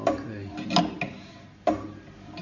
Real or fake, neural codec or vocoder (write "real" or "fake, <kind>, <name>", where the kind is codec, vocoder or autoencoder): real